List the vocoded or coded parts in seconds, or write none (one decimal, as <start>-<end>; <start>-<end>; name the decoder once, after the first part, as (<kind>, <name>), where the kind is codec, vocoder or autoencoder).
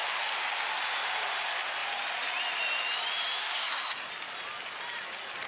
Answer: 3.4-4.1 (codec, SNAC)